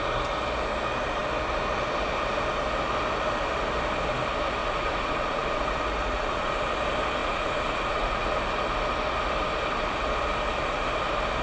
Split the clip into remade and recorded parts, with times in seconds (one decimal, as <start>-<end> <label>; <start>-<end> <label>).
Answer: 0.0-4.6 recorded; 4.6-6.5 remade; 6.5-7.2 recorded; 7.2-8.4 remade; 8.4-11.4 recorded